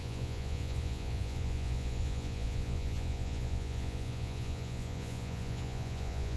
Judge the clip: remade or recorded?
remade